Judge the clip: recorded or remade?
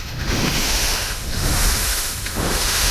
remade